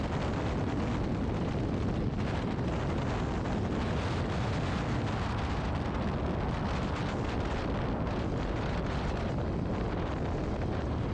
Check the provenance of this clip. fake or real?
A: real